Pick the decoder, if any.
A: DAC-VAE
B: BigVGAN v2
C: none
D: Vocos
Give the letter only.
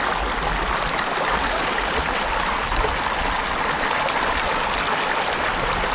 C